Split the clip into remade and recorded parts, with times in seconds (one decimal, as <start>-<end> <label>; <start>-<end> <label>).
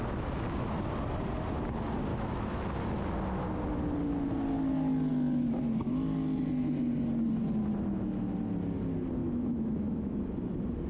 0.0-2.1 recorded; 2.1-2.6 remade; 2.6-9.2 recorded; 9.2-10.2 remade; 10.2-10.9 recorded